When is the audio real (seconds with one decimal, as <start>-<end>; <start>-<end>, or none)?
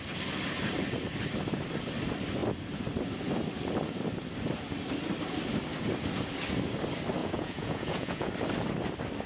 0.0-7.2; 8.3-9.3